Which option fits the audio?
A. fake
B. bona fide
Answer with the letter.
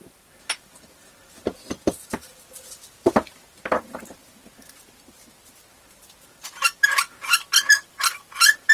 B